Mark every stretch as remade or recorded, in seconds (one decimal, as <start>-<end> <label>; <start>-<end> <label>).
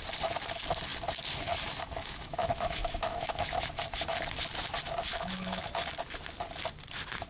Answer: 0.0-2.0 recorded; 2.0-3.6 remade; 3.6-5.1 recorded; 5.1-5.7 remade; 5.7-7.3 recorded